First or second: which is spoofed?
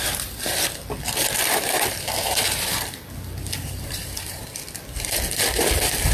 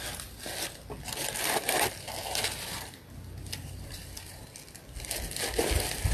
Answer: first